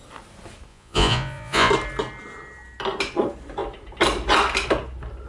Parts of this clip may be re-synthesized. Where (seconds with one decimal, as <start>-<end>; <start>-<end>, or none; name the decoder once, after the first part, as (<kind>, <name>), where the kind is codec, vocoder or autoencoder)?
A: 0.7-1.7 (vocoder, Vocos)